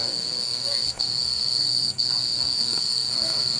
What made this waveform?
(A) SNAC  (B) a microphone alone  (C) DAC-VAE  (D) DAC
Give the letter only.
A